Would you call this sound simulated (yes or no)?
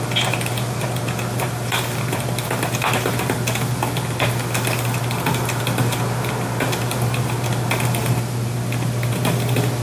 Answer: no